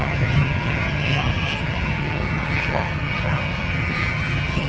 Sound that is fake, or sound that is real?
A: fake